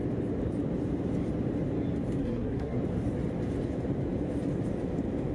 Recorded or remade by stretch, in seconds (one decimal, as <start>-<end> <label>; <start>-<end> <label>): 0.0-2.2 recorded; 2.2-2.8 remade; 2.8-5.3 recorded

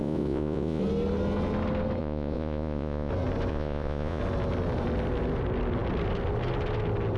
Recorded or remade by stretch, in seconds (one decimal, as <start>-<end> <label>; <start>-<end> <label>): 0.0-0.8 remade; 0.8-2.0 recorded; 2.0-3.1 remade; 3.1-3.5 recorded; 3.5-4.2 remade; 4.2-7.2 recorded